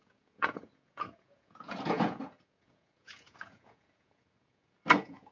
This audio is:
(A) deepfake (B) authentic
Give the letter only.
A